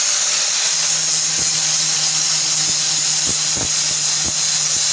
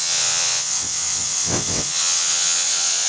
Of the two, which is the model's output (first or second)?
second